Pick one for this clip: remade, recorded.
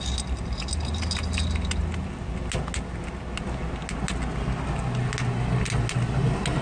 recorded